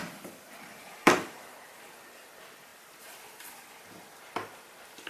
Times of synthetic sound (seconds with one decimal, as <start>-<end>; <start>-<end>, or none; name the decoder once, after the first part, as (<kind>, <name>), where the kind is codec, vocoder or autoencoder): 0.7-1.4 (vocoder, BigVGAN v2)